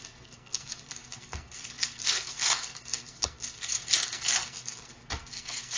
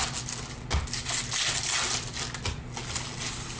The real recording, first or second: second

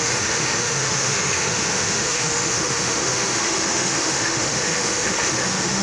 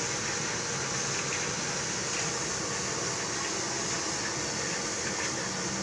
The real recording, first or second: second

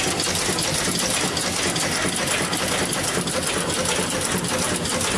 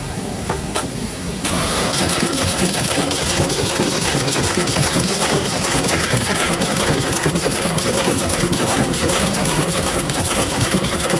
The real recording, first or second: first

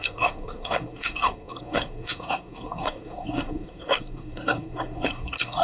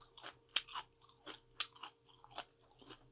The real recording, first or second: second